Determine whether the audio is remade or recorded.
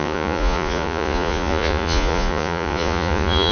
remade